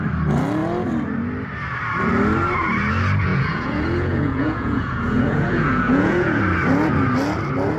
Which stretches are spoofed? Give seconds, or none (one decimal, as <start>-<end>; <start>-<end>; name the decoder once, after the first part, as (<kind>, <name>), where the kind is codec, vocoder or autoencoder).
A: 3.3-6.4 (vocoder, Vocos)

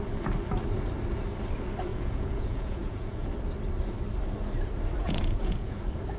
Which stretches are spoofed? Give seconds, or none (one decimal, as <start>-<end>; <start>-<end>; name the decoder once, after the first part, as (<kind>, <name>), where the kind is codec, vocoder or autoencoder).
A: 1.9-3.3 (vocoder, Vocos); 5.0-5.8

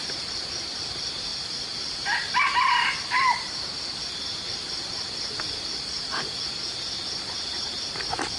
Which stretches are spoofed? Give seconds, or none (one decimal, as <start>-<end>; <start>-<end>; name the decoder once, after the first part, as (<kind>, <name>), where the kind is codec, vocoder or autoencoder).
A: none

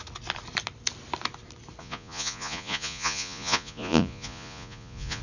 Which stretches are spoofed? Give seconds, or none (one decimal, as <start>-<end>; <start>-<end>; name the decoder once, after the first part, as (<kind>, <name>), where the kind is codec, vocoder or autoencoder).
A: 1.8-5.2 (vocoder, Vocos)

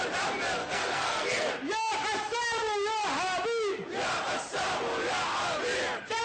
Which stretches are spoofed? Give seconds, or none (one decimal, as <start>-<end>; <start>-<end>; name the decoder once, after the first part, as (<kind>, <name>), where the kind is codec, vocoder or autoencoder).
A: 0.6-1.5 (codec, SNAC)

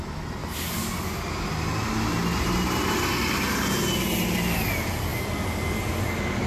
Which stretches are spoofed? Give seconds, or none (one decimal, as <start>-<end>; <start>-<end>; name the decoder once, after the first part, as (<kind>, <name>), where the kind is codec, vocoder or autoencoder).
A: none

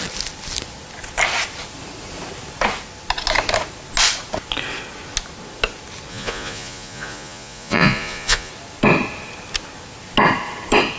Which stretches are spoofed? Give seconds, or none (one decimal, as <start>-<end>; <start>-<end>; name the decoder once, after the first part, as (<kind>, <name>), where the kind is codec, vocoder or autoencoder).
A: 6.1-8.5 (vocoder, Vocos)